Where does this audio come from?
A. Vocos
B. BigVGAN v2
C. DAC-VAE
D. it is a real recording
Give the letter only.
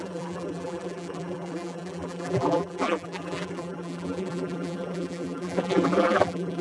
B